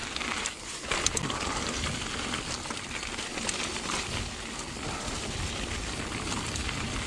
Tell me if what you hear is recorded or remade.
recorded